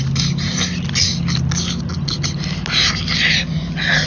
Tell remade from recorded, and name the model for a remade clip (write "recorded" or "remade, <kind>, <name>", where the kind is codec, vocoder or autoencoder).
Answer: recorded